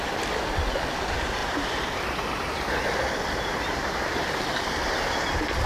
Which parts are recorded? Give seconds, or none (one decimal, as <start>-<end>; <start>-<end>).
0.0-1.4; 4.8-5.7